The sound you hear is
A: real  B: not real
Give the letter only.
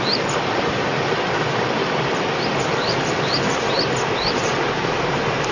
A